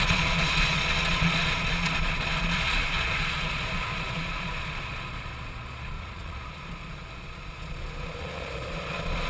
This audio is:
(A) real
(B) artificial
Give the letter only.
B